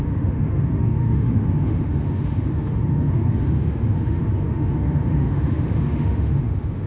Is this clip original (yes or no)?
no